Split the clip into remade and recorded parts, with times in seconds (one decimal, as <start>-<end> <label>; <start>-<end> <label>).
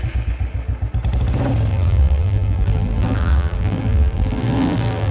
0.0-1.7 recorded; 1.7-5.1 remade